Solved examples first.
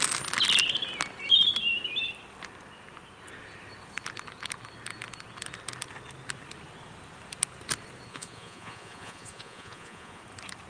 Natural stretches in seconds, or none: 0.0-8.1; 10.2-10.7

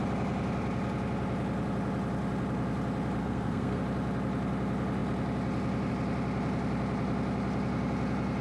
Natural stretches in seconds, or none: 0.0-3.2; 3.8-8.4

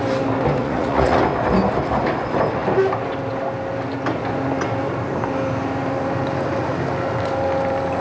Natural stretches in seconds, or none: 0.0-0.6; 1.2-8.0

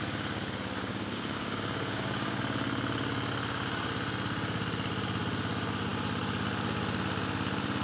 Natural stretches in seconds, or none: 0.0-0.9; 2.4-7.8